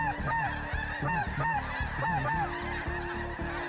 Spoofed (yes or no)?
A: no